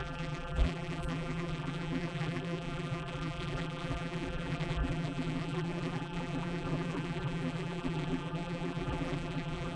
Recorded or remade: remade